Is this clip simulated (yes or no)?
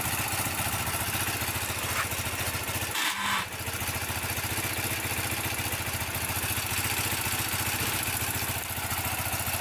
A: no